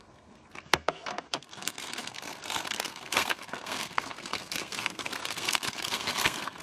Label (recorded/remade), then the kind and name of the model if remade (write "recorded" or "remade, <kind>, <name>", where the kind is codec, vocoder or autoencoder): remade, codec, SNAC